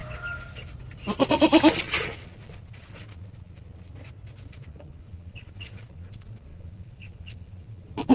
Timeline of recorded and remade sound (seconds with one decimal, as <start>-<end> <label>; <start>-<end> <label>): 0.0-1.2 recorded; 1.2-3.9 remade; 3.9-4.5 recorded; 4.5-8.1 remade